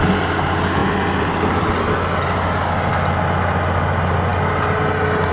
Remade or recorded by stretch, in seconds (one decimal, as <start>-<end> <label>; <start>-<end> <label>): 0.0-5.3 recorded